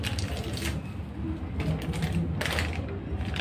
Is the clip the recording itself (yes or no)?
yes